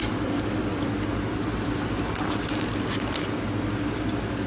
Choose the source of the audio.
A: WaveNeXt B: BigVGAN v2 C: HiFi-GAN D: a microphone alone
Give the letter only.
D